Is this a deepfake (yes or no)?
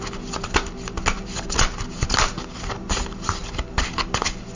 no